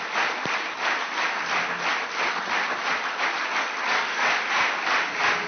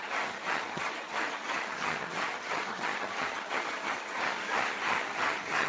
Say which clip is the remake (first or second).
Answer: second